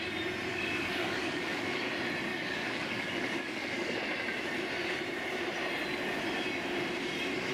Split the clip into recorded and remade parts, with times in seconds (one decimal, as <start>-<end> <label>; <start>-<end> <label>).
0.0-0.5 recorded; 0.5-1.9 remade; 1.9-2.3 recorded; 2.3-4.0 remade; 4.0-7.5 recorded